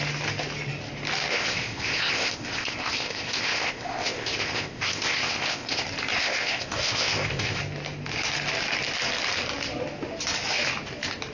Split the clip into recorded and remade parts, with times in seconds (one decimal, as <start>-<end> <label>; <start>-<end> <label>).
0.0-1.3 recorded; 1.3-5.8 remade; 5.8-6.2 recorded; 6.2-7.6 remade; 7.6-11.3 recorded

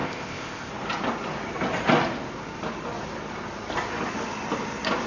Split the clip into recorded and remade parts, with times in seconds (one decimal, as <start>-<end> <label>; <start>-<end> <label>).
0.0-0.7 remade; 0.7-5.1 recorded

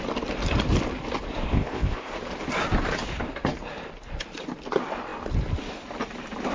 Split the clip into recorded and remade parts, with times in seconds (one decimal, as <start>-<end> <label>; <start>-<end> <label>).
0.0-1.5 recorded; 1.5-2.1 remade; 2.1-6.5 recorded

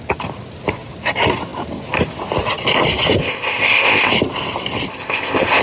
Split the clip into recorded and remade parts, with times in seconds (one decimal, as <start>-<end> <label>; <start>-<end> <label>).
0.0-3.2 recorded; 3.2-4.1 remade; 4.1-4.9 recorded; 4.9-5.6 remade

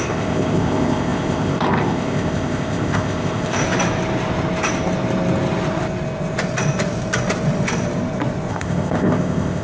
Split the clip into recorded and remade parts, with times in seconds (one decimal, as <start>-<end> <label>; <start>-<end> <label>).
0.0-3.6 remade; 3.6-8.5 recorded; 8.5-9.6 remade

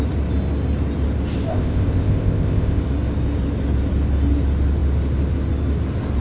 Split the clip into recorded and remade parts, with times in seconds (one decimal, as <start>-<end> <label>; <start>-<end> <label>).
0.0-1.5 recorded; 1.5-2.8 remade; 2.8-6.2 recorded